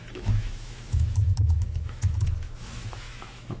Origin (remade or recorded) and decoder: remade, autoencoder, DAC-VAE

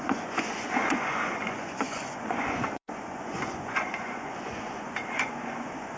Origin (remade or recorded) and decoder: remade, vocoder, Vocos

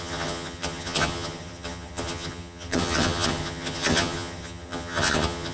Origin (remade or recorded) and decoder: remade, vocoder, HiFi-GAN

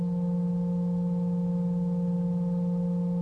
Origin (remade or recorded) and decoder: recorded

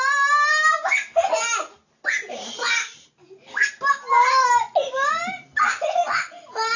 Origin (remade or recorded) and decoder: recorded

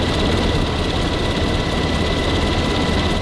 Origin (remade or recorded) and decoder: recorded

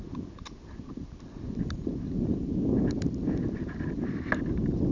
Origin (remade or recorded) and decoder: recorded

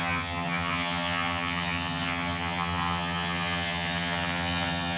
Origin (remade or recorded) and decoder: remade, vocoder, HiFi-GAN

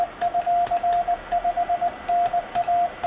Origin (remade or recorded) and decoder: recorded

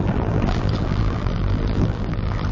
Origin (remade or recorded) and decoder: remade, vocoder, BigVGAN v2